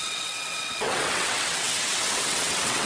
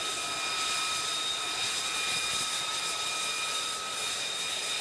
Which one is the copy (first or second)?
first